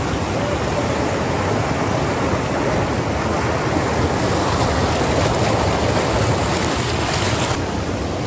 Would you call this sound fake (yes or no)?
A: no